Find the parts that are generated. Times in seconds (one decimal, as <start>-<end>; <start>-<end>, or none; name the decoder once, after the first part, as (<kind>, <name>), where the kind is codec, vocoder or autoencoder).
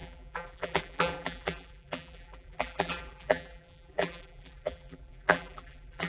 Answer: 0.0-6.1 (vocoder, BigVGAN v2)